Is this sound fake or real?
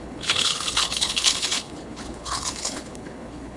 fake